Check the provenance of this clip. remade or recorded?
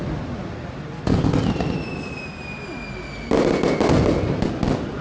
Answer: recorded